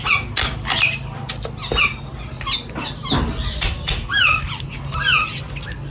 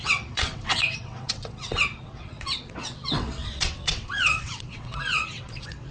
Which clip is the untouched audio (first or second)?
first